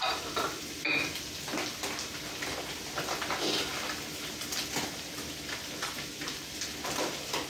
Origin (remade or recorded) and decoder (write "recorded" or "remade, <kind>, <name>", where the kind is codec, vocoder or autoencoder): recorded